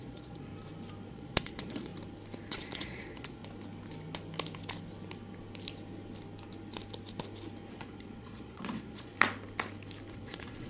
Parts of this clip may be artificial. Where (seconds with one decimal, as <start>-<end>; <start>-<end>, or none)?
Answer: 0.0-0.5; 1.1-1.9; 2.5-3.4; 7.7-9.1; 10.1-10.7